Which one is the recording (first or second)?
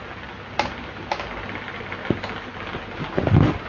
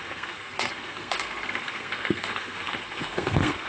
first